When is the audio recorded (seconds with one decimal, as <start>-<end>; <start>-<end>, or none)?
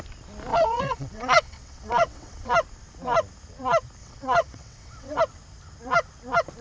0.0-0.5; 2.5-4.0; 5.2-6.6